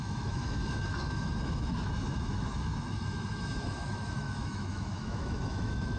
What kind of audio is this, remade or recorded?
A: remade